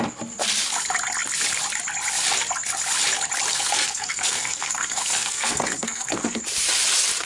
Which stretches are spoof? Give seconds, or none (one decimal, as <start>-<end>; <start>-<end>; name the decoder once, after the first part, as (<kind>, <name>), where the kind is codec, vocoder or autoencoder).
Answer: 3.5-6.4 (codec, SNAC)